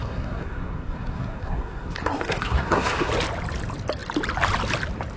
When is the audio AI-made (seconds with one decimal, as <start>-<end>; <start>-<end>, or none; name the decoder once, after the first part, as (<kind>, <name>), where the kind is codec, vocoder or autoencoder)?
0.0-3.1 (codec, SNAC)